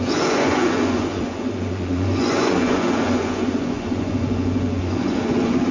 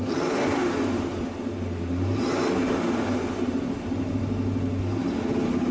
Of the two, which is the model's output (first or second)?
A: first